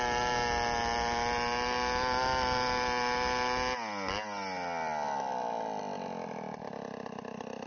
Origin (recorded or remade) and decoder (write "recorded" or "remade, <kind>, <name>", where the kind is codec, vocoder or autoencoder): recorded